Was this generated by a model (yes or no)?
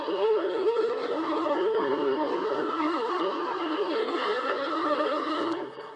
yes